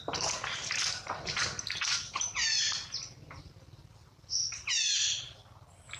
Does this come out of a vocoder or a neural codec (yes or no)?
no